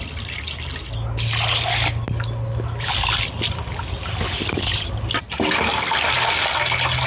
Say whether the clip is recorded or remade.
recorded